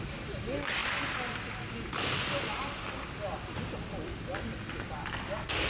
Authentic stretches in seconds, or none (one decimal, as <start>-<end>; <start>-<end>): 0.0-5.7